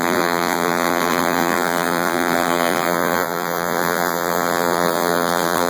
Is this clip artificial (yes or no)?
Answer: yes